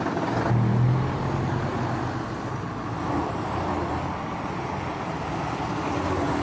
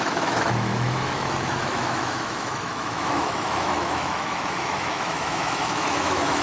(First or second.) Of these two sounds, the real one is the first